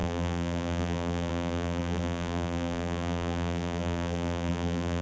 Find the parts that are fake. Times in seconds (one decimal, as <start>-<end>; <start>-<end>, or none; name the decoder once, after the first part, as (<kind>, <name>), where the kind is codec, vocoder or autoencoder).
0.0-5.0 (vocoder, BigVGAN v2)

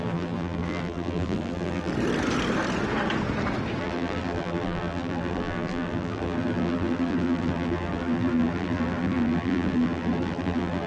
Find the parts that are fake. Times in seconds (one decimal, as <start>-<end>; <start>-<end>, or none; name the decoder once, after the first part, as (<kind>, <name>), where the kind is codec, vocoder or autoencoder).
0.0-1.9 (vocoder, BigVGAN v2); 3.8-10.9

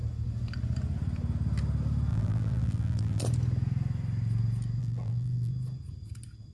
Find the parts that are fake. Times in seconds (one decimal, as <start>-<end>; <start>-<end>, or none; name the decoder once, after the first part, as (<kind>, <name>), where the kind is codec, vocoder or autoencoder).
2.1-3.2 (vocoder, BigVGAN v2); 4.8-5.5